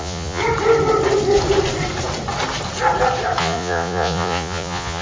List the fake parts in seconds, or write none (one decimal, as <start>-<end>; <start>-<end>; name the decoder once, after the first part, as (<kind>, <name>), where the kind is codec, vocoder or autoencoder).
0.0-0.4 (vocoder, Vocos); 3.4-5.0